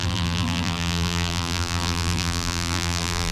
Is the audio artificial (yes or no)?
yes